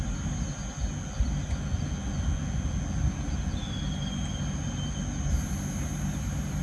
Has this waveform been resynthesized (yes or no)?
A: no